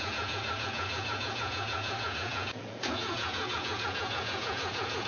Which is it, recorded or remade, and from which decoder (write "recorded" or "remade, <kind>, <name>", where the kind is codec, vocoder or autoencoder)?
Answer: remade, vocoder, Vocos